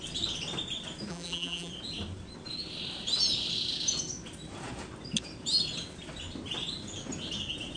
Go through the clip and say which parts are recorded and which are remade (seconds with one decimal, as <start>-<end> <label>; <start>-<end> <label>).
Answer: 0.0-1.1 recorded; 1.1-1.7 remade; 1.7-7.8 recorded